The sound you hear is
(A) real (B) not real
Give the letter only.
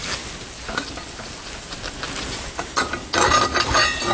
A